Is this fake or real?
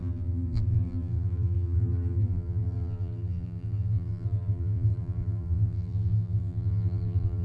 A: fake